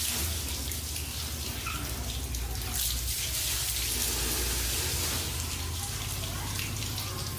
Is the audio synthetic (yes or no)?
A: no